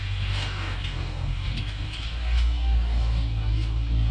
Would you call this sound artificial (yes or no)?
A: yes